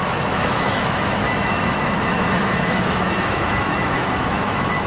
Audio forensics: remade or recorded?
remade